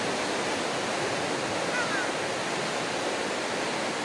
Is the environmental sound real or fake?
real